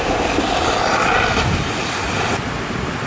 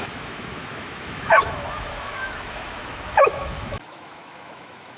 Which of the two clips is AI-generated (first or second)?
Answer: second